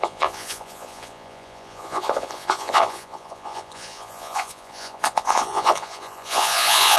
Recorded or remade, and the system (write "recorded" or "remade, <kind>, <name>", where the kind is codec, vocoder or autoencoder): remade, vocoder, Vocos